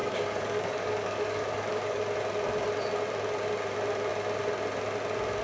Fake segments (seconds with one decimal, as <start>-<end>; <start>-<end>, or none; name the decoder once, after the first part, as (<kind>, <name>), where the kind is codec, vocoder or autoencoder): 0.0-2.0 (codec, DAC)